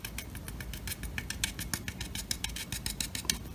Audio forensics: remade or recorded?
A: recorded